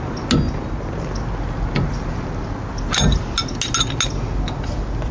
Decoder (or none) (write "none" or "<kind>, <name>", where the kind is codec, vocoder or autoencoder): none